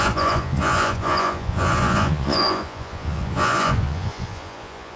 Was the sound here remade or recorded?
remade